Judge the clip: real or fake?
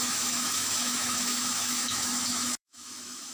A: fake